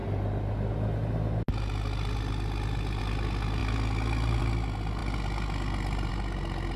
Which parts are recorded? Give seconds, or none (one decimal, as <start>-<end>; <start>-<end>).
0.0-6.8